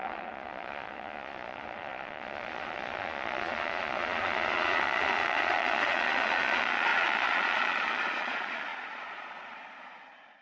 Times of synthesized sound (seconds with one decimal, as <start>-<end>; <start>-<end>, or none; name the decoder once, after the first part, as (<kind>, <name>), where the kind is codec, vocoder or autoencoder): 0.0-10.4 (vocoder, Vocos)